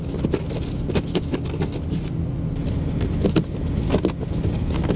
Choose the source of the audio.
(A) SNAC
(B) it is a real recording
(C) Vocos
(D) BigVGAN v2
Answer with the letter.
B